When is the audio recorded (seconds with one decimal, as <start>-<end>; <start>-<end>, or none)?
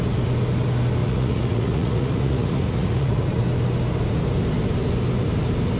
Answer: 0.0-1.0; 3.4-5.8